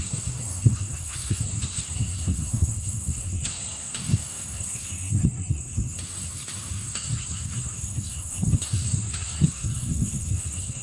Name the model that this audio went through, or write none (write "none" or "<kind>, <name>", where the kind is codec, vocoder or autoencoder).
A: codec, SNAC